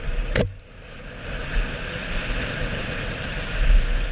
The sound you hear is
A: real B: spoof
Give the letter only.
A